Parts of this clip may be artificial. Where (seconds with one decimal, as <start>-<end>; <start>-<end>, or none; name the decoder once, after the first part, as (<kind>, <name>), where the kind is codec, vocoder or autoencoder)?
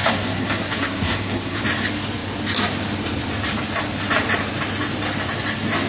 0.0-1.6 (codec, SNAC)